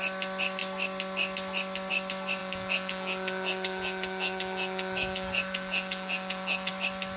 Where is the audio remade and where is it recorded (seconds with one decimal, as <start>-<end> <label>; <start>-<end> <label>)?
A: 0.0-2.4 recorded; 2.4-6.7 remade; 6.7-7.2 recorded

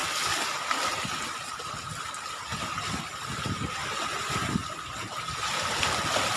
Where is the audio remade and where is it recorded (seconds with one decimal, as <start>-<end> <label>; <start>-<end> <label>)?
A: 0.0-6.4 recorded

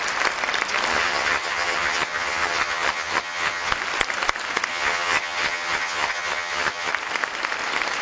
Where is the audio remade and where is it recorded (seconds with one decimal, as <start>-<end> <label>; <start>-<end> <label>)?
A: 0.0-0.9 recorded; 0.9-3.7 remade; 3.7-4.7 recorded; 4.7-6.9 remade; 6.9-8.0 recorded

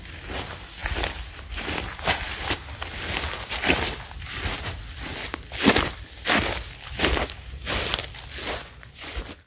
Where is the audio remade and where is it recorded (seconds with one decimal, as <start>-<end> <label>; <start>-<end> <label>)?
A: 0.0-8.5 recorded; 8.5-9.1 remade; 9.1-9.5 recorded

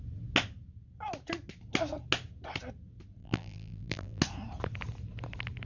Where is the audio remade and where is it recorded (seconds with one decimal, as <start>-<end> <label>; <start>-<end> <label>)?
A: 0.0-3.2 recorded; 3.2-4.2 remade; 4.2-5.7 recorded

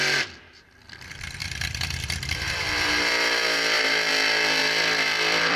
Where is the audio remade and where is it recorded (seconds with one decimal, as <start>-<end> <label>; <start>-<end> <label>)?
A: 0.0-1.4 recorded; 1.4-4.1 remade; 4.1-4.6 recorded; 4.6-5.6 remade

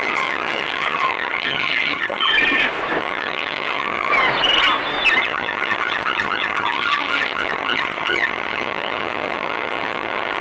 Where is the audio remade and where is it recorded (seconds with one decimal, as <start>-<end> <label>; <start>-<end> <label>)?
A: 0.0-2.3 remade; 2.3-3.0 recorded; 3.0-4.1 remade; 4.1-5.2 recorded; 5.2-10.4 remade